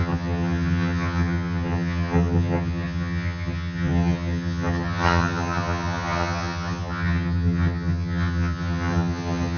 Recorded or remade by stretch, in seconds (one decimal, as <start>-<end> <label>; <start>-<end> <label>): 0.0-9.6 remade